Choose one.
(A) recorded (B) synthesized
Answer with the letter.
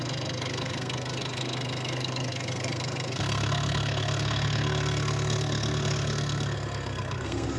B